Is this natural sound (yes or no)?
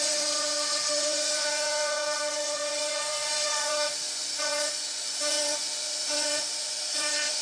no